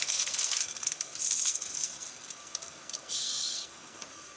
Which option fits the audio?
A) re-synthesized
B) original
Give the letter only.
A